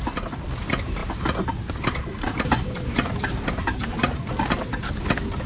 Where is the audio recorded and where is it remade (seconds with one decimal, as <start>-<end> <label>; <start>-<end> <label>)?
0.0-1.0 recorded; 1.0-4.3 remade; 4.3-5.5 recorded